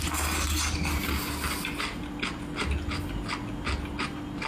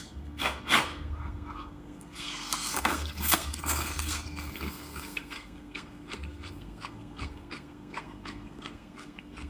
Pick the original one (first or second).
first